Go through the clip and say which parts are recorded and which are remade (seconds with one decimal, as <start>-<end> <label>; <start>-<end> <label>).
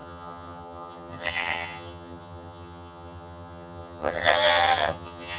0.0-5.4 remade